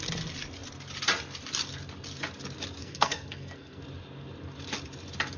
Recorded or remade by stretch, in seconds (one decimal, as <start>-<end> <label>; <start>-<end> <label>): 0.0-2.8 recorded; 2.8-3.8 remade; 3.8-5.4 recorded